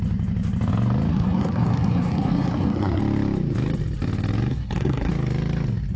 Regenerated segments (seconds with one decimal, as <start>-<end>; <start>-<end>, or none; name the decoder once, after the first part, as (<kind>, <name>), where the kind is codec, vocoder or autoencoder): 1.1-3.0 (codec, SNAC); 4.5-5.1